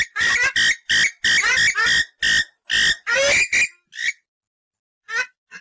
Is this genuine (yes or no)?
yes